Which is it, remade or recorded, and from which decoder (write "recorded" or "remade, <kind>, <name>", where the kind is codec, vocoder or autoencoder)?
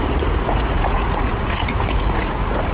remade, vocoder, Vocos